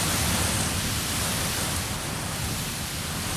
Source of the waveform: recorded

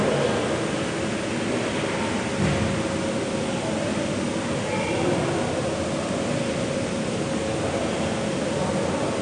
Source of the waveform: recorded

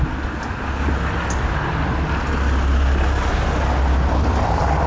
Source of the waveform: recorded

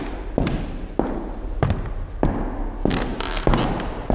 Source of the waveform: recorded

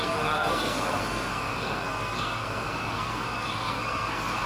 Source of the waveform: remade